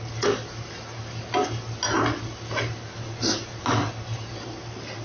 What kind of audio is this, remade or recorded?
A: recorded